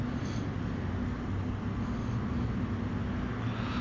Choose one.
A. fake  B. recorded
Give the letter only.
B